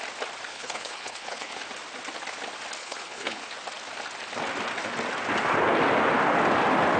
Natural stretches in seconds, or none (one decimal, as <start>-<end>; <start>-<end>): 0.0-0.5; 1.6-2.8; 3.4-7.0